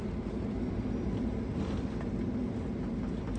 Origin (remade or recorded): recorded